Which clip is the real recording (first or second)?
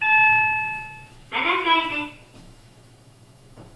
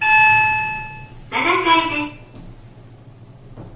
second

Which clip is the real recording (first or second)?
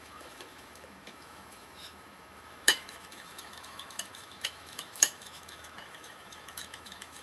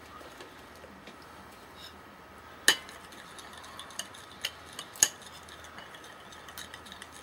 second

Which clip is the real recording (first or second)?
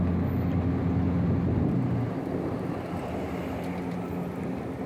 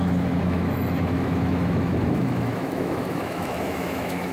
first